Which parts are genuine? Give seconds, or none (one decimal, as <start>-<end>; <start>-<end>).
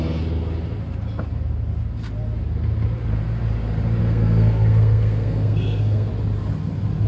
0.0-4.0; 6.1-7.1